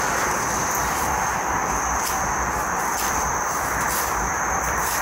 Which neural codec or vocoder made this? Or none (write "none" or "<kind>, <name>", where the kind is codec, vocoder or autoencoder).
none